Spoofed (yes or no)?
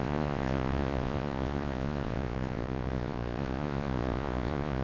yes